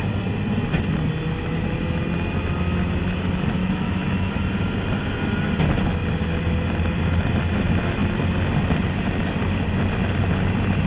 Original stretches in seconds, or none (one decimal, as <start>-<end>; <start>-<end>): 0.0-3.6; 4.3-10.9